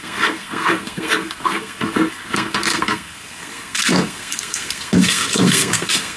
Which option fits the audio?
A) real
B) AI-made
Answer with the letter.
B